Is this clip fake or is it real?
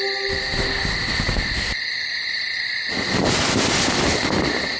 real